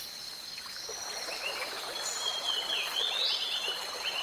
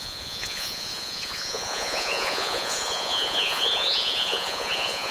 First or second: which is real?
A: first